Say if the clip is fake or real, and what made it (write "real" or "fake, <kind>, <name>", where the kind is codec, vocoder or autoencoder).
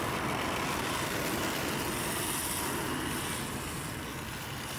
real